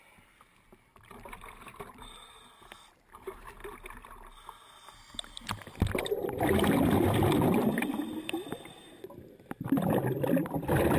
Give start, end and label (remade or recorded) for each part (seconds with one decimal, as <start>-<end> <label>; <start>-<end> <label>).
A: 0.0-3.6 remade; 3.6-6.0 recorded; 6.0-7.6 remade; 7.6-8.8 recorded; 8.8-11.0 remade